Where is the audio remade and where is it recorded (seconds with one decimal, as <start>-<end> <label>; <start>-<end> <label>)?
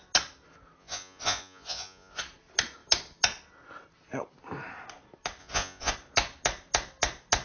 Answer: 0.0-0.8 recorded; 0.8-2.2 remade; 2.2-5.4 recorded; 5.4-5.9 remade; 5.9-7.4 recorded